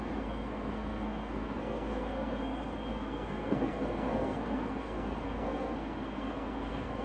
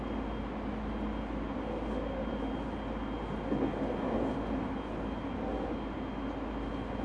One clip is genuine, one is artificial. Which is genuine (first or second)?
second